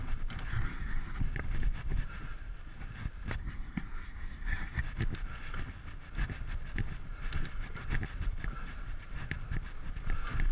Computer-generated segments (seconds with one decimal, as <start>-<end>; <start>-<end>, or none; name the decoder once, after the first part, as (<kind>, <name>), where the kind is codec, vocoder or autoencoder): 0.5-1.2 (codec, SNAC); 3.4-4.8